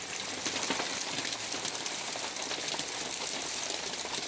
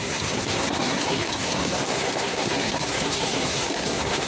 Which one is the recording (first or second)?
first